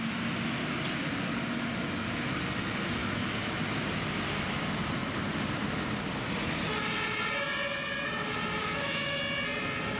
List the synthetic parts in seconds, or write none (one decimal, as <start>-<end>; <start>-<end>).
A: 3.0-3.6; 8.6-9.2